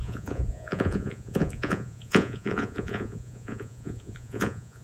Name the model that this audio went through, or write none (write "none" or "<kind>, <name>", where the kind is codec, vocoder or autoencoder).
vocoder, Vocos